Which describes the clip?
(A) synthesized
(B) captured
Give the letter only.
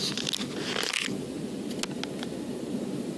B